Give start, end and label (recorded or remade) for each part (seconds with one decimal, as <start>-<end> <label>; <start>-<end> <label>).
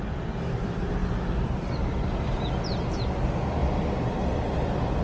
0.0-5.0 recorded